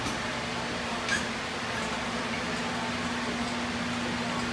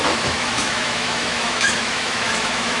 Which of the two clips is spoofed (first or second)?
second